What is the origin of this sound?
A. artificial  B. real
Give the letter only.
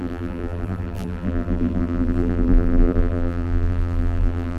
A